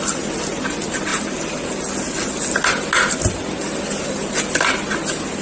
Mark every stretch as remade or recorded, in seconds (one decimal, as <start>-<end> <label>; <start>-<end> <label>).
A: 0.0-5.4 recorded